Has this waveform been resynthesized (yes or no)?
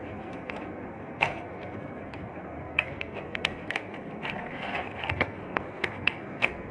yes